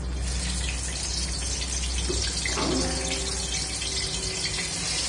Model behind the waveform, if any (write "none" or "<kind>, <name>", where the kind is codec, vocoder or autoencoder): none